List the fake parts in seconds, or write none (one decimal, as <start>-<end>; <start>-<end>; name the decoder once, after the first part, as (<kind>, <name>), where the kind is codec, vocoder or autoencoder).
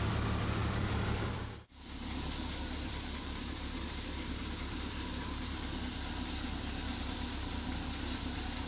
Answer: 0.0-8.7 (vocoder, BigVGAN v2)